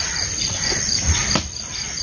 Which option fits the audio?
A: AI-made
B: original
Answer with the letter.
B